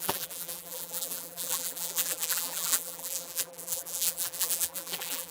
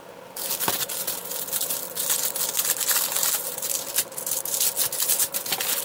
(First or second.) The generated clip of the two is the first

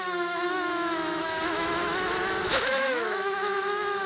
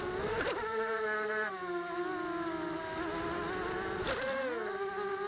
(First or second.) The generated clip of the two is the first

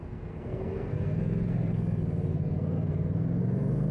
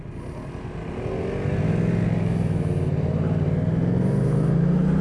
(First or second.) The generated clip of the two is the first